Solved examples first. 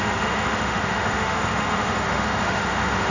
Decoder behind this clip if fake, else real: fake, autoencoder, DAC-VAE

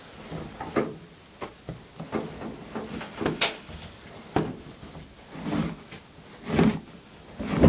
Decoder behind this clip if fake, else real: real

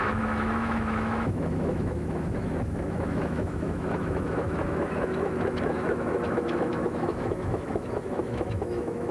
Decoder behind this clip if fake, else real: fake, autoencoder, DAC-VAE